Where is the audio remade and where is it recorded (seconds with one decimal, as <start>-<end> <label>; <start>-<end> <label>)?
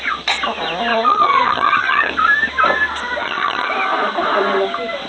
0.0-0.9 recorded; 0.9-2.1 remade; 2.1-3.2 recorded; 3.2-3.7 remade; 3.7-5.1 recorded